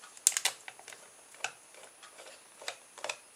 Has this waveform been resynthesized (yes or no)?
no